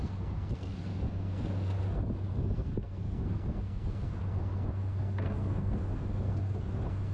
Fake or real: fake